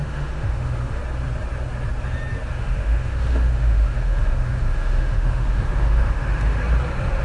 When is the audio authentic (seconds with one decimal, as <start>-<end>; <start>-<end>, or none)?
1.0-2.5; 6.6-7.2